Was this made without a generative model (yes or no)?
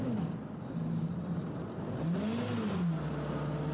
yes